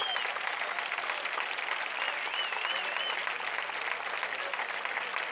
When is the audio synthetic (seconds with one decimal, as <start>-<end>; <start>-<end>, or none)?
none